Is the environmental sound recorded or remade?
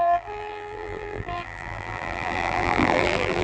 remade